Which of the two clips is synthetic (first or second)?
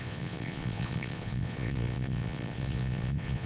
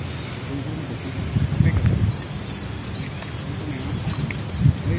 first